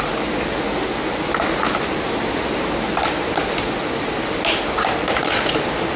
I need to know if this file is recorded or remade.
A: recorded